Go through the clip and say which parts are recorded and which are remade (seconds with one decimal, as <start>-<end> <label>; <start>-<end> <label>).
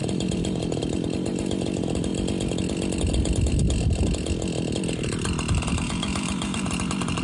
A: 0.0-2.1 remade; 2.1-5.5 recorded; 5.5-7.2 remade